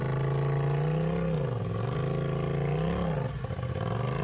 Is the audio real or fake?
real